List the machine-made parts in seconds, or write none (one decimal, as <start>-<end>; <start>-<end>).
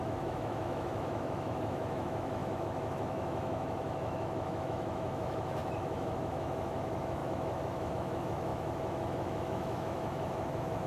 0.0-10.9